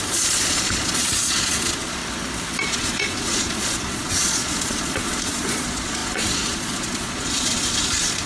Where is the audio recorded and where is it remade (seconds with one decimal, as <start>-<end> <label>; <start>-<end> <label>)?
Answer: 0.0-2.0 remade; 2.0-2.6 recorded; 2.6-8.3 remade

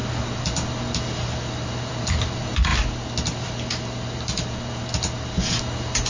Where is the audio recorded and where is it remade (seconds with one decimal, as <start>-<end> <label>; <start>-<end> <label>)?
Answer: 0.0-6.1 recorded

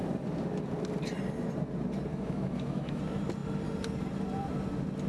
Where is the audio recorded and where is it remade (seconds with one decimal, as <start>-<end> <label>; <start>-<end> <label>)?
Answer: 0.0-2.1 recorded; 2.1-3.0 remade; 3.0-5.1 recorded

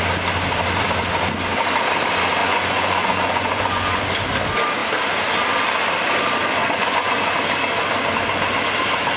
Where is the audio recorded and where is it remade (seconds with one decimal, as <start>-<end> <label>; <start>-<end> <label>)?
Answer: 0.0-2.4 recorded; 2.4-4.0 remade; 4.0-6.6 recorded; 6.6-7.3 remade; 7.3-9.2 recorded

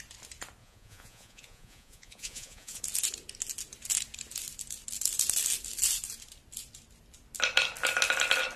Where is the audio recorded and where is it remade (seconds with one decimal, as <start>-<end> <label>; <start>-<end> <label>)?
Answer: 0.0-0.6 recorded; 0.6-2.8 remade; 2.8-8.6 recorded

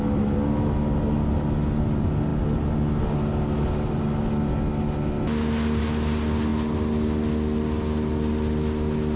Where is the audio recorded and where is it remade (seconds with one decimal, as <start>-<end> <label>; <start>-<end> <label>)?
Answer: 0.0-9.2 recorded